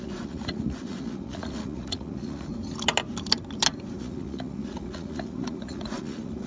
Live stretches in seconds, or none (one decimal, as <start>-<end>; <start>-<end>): 2.5-4.0